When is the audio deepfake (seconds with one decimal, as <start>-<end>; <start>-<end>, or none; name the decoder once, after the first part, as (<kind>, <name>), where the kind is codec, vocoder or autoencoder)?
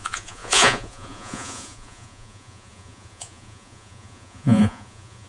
0.0-5.3 (vocoder, Vocos)